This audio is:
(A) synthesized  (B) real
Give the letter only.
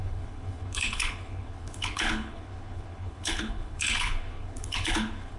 A